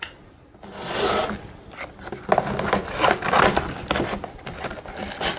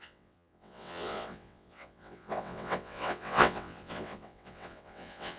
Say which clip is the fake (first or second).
second